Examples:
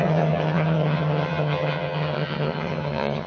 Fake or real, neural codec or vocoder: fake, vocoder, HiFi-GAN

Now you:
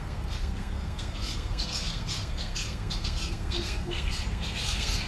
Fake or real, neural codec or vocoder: fake, codec, SNAC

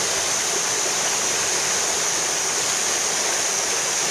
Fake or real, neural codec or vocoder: real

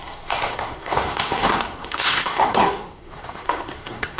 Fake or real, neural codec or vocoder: fake, codec, SNAC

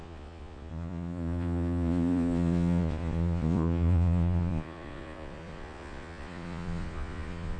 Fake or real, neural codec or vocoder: fake, vocoder, Vocos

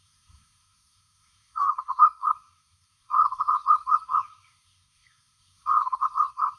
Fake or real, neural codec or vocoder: fake, codec, SNAC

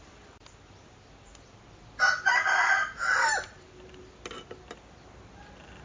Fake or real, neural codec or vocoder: real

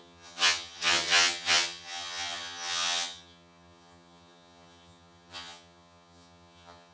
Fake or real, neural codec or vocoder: fake, vocoder, HiFi-GAN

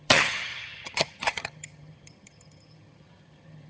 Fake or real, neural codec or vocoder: fake, vocoder, HiFi-GAN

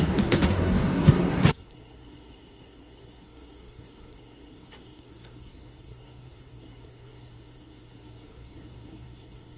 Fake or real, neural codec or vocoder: fake, codec, SNAC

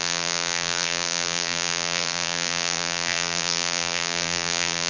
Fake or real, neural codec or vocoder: fake, vocoder, BigVGAN v2